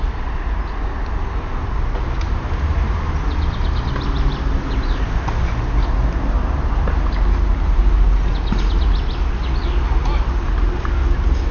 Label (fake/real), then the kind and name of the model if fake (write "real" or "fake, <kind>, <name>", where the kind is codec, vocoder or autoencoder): real